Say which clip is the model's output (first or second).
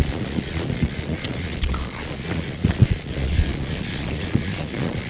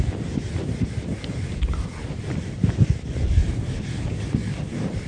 first